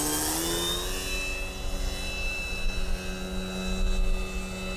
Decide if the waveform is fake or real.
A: real